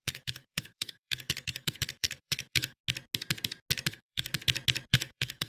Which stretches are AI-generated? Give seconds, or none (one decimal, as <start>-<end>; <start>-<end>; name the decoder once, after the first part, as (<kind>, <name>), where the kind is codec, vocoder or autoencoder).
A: 0.0-2.8 (codec, SNAC); 3.9-4.3; 4.9-5.5

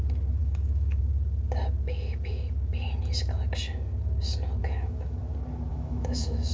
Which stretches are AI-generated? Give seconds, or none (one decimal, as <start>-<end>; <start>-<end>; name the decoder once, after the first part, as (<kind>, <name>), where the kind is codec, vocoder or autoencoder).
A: 0.4-1.0 (autoencoder, DAC-VAE); 4.6-5.2; 5.7-6.5

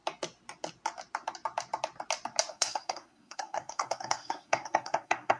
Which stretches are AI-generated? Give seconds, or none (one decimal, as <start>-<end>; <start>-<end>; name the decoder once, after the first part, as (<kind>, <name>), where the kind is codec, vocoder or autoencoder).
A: 2.5-5.4 (codec, SNAC)

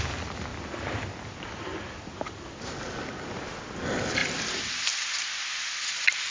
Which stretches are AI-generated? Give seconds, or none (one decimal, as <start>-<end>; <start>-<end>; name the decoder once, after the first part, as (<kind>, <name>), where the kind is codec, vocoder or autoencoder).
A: none

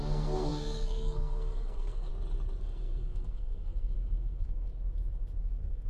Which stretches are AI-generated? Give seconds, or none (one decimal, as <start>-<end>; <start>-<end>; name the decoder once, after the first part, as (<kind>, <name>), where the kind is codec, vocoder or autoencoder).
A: 0.0-2.1 (codec, SNAC); 2.6-4.7; 5.4-5.9

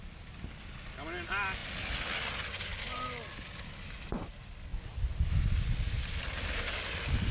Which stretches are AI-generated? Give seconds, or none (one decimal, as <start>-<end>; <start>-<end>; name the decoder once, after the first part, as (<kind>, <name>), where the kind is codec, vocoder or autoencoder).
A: none

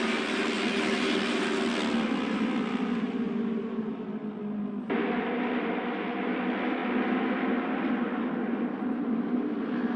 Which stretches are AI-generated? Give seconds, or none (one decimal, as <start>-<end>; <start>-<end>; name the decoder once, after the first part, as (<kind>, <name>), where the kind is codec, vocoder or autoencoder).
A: none